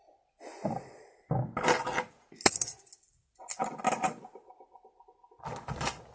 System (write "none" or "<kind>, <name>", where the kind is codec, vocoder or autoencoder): none